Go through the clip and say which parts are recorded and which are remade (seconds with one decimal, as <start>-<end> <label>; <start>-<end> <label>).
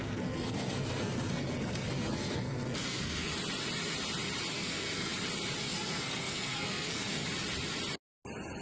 0.0-3.3 remade; 3.3-4.5 recorded; 4.5-5.1 remade; 5.1-5.6 recorded; 5.6-7.2 remade; 7.2-8.6 recorded